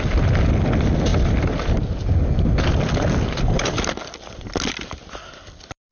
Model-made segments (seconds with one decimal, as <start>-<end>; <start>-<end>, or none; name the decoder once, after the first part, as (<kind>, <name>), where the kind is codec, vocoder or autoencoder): none